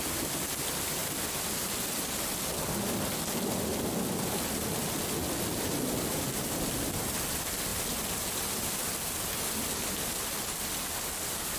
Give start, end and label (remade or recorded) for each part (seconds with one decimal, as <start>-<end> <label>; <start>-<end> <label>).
0.0-11.6 recorded